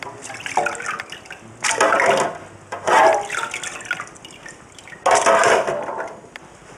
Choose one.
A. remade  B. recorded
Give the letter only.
B